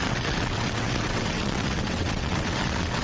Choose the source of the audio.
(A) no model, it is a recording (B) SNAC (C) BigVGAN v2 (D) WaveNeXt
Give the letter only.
D